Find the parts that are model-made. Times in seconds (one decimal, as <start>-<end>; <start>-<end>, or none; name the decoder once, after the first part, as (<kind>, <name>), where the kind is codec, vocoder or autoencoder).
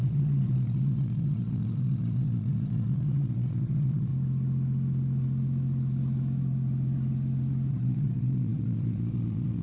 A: 0.0-4.1 (vocoder, Vocos); 7.7-9.6